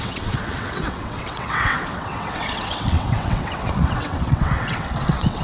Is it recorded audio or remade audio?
remade